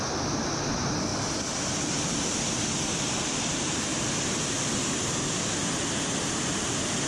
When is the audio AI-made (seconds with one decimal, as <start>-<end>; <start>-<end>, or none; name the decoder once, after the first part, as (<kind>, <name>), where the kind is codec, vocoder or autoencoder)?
none

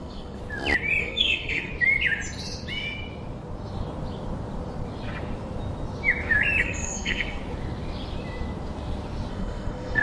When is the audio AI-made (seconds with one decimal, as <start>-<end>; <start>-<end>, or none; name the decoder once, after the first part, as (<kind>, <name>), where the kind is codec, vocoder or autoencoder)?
0.0-0.4 (codec, SNAC); 1.0-1.7; 6.6-7.4; 9.3-10.0

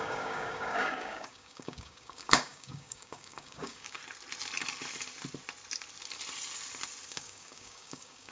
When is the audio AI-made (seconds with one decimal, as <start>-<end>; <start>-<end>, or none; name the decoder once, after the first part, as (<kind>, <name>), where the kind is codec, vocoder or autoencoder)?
0.0-4.0 (codec, DAC); 7.1-8.3

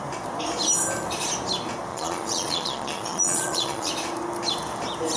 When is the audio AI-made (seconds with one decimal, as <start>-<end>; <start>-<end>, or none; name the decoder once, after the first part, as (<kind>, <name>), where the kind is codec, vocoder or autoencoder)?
1.9-3.9 (vocoder, Vocos)